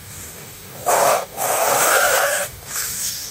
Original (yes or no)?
no